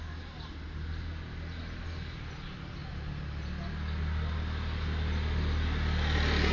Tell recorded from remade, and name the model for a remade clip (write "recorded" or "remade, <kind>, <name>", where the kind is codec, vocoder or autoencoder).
recorded